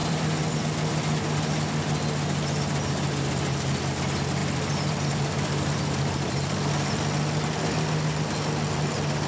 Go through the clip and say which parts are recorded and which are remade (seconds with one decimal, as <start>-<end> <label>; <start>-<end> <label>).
0.0-0.6 remade; 0.6-4.4 recorded; 4.4-6.7 remade; 6.7-9.3 recorded